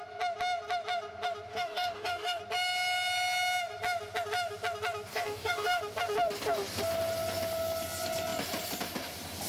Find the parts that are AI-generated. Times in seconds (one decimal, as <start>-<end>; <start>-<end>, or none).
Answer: 1.5-2.4; 5.1-5.8